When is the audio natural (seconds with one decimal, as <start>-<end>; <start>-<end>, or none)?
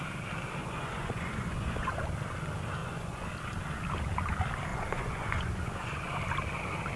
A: 0.0-0.6; 2.0-2.8; 3.3-4.7; 6.2-7.0